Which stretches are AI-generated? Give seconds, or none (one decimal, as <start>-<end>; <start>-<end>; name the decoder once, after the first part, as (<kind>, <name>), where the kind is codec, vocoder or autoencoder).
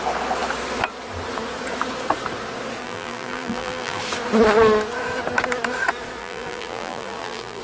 2.8-4.0 (vocoder, BigVGAN v2); 6.2-7.6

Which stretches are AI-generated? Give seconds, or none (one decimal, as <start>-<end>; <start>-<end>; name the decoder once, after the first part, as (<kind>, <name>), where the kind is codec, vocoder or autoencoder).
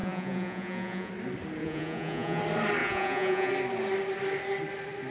0.0-1.1 (vocoder, Vocos); 1.6-2.4; 2.8-3.5